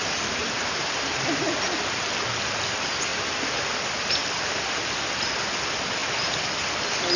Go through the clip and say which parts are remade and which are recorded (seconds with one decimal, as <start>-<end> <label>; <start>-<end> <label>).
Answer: 0.0-0.4 recorded; 0.4-1.1 remade; 1.1-3.1 recorded; 3.1-5.3 remade; 5.3-6.0 recorded; 6.0-7.2 remade